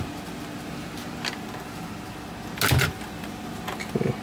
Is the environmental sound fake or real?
real